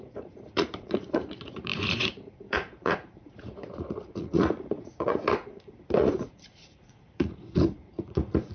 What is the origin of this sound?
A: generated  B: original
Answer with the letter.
A